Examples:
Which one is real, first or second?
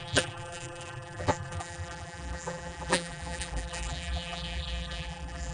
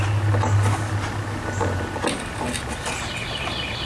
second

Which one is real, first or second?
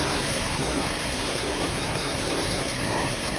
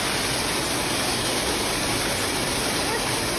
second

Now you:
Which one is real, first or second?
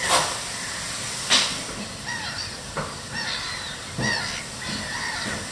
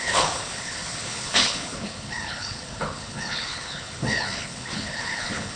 first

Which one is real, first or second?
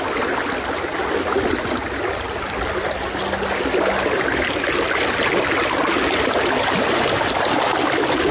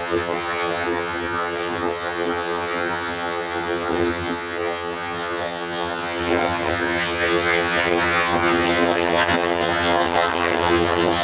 first